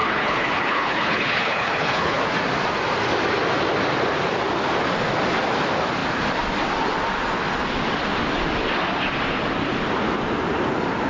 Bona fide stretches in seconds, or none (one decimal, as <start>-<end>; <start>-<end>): 2.2-11.1